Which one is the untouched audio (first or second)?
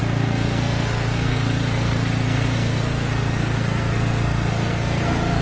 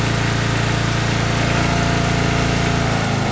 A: second